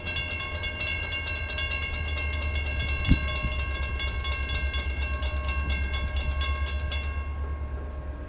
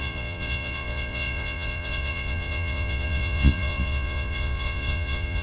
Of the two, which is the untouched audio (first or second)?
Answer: first